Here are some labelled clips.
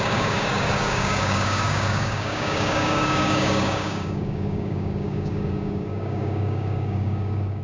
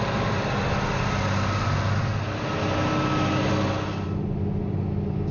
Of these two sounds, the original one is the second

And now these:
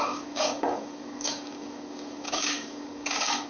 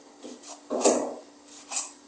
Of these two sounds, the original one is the second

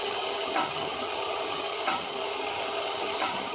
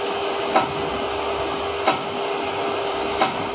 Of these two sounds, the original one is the second